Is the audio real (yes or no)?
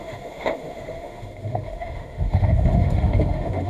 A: no